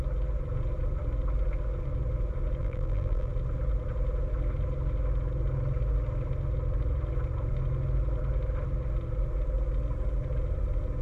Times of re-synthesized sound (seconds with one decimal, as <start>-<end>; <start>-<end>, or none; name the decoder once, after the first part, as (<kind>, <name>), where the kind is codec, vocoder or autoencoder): 2.6-3.3 (vocoder, BigVGAN v2)